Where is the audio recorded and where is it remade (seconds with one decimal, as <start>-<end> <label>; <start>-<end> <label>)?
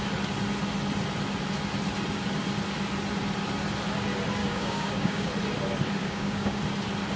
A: 0.0-4.4 recorded; 4.4-5.3 remade; 5.3-6.0 recorded; 6.0-6.6 remade; 6.6-7.2 recorded